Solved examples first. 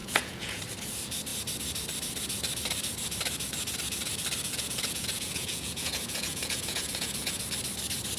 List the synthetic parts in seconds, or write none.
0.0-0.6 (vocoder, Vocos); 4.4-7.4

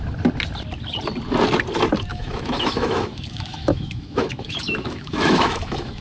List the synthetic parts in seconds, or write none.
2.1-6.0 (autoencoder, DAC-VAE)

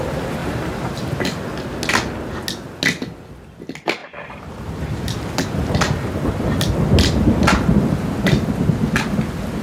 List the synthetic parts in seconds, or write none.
0.4-1.0 (vocoder, BigVGAN v2)

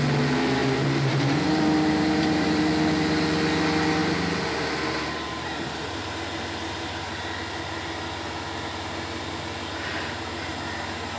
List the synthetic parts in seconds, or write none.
0.6-2.6 (vocoder, BigVGAN v2); 4.0-6.1; 9.9-10.5

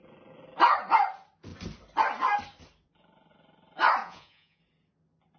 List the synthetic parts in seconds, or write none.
4.0-4.6 (vocoder, Vocos)